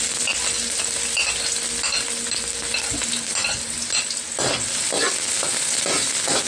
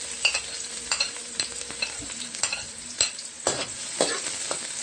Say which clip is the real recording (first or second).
first